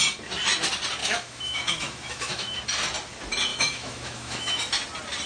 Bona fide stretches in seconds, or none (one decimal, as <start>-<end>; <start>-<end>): 0.0-1.0; 2.6-3.5; 4.6-5.3